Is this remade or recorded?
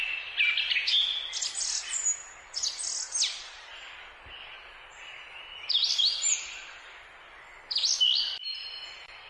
recorded